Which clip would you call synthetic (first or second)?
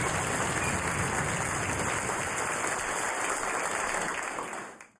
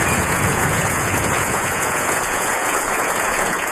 second